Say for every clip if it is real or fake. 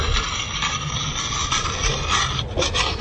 real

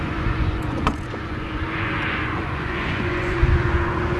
fake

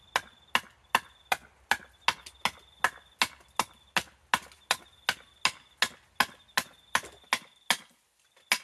real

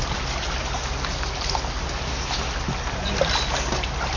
real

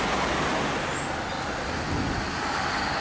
real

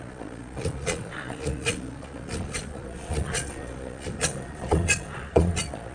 fake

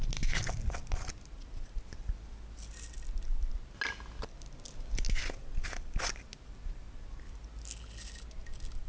real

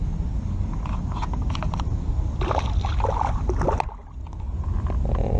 real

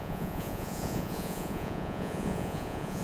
fake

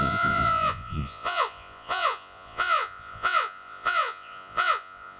fake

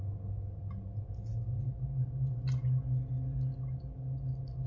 real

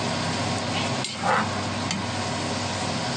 real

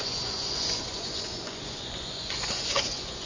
fake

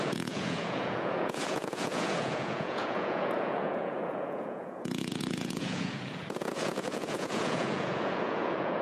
fake